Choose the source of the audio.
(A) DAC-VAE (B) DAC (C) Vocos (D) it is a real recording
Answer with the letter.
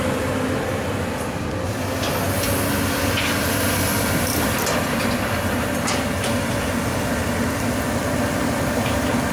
D